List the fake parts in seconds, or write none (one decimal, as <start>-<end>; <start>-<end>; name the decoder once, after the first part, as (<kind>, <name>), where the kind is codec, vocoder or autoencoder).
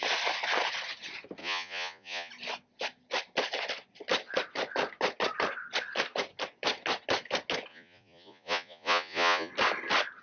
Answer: 1.4-2.3 (vocoder, Vocos); 7.7-9.5